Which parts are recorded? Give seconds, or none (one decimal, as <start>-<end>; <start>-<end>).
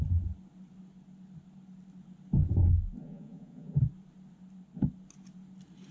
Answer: 0.0-3.0; 3.8-5.9